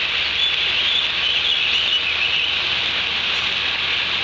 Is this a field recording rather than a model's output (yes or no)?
yes